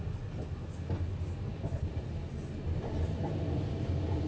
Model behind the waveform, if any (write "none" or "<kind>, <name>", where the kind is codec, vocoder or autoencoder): none